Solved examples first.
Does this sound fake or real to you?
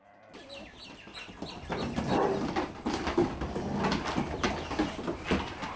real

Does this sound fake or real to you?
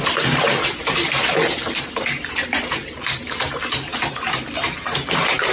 fake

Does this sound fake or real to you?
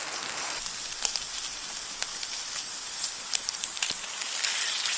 real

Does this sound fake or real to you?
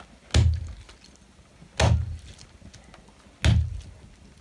real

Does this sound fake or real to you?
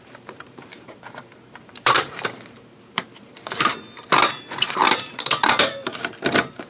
fake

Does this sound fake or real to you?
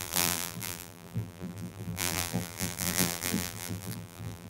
fake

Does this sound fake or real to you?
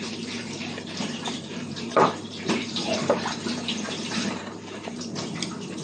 fake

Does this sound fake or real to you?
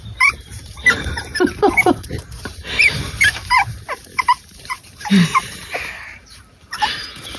fake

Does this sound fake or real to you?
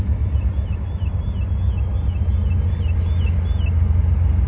real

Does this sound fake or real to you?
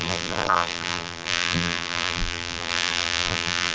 fake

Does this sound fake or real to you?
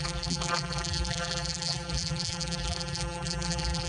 fake